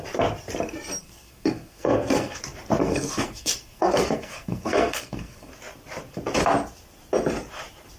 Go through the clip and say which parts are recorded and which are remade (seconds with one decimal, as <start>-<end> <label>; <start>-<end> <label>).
0.0-1.0 recorded; 1.0-2.4 remade; 2.4-2.8 recorded; 2.8-5.5 remade; 5.5-8.0 recorded

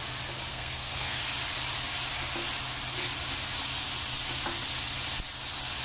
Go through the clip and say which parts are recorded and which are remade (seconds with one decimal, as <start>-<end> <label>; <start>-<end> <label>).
0.0-0.5 recorded; 0.5-1.2 remade; 1.2-5.8 recorded

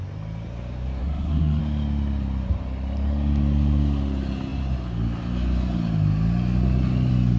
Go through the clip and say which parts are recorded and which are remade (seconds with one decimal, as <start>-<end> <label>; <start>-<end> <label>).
0.0-1.0 recorded; 1.0-1.6 remade; 1.6-7.4 recorded

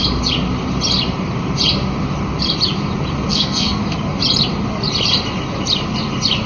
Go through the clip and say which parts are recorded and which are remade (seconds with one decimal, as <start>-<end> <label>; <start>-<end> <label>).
0.0-3.3 recorded; 3.3-3.8 remade; 3.8-6.5 recorded

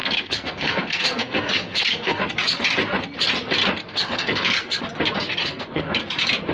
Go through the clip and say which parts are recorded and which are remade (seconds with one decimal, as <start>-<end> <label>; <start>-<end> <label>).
0.0-2.2 remade; 2.2-3.8 recorded; 3.8-4.8 remade; 4.8-5.4 recorded; 5.4-5.9 remade; 5.9-6.5 recorded